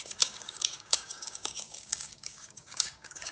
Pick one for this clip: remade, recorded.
remade